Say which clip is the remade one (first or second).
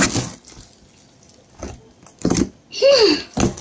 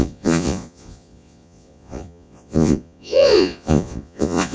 second